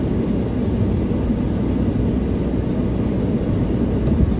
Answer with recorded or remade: recorded